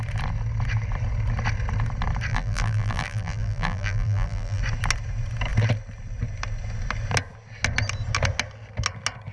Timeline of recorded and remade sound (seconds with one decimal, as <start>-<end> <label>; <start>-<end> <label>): 0.0-2.3 recorded; 2.3-4.6 remade; 4.6-9.3 recorded